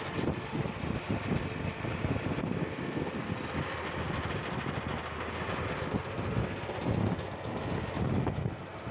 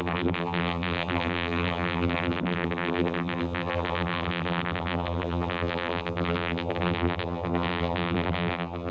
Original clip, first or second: first